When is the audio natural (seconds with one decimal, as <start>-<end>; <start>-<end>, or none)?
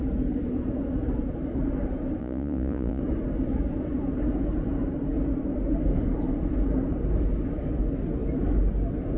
0.0-2.2; 3.0-9.2